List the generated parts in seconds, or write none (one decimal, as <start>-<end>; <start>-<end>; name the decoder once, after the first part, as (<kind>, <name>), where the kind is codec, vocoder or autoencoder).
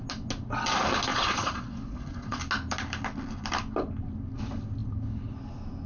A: 1.1-2.4 (vocoder, Vocos)